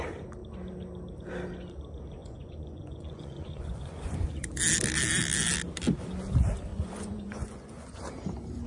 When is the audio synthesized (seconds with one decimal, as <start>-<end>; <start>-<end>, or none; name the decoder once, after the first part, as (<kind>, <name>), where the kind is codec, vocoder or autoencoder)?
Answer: 2.2-4.6 (vocoder, Vocos); 6.7-8.0